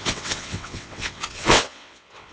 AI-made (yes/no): yes